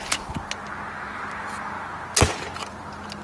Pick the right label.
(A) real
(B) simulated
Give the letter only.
A